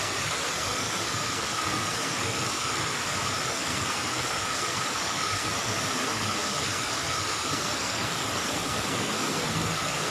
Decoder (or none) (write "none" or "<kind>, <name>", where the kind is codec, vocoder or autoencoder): codec, SNAC